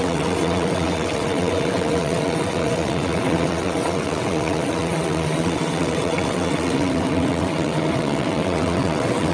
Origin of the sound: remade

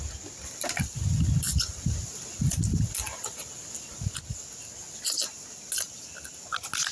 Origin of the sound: recorded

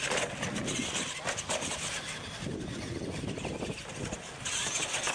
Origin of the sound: recorded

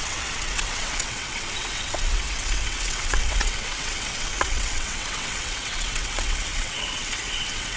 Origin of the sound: remade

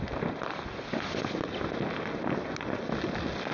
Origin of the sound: recorded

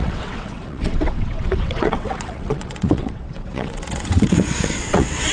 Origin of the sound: remade